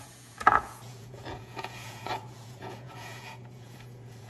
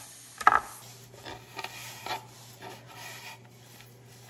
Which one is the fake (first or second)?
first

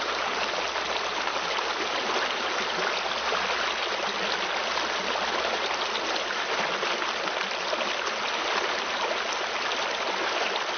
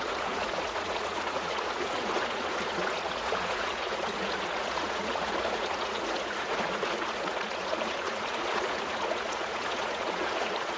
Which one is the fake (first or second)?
second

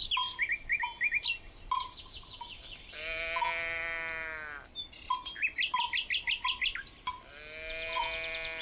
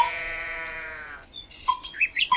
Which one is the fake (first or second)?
second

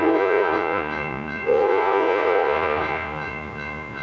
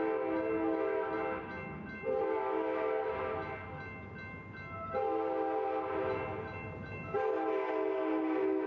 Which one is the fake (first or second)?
first